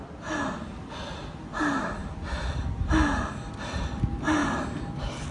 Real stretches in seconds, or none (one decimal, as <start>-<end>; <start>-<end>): 0.0-5.3